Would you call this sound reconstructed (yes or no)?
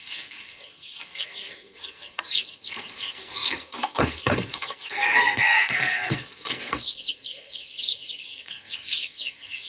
yes